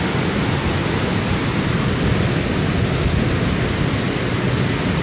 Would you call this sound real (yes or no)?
yes